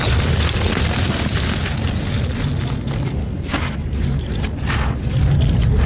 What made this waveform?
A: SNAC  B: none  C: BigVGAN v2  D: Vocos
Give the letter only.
B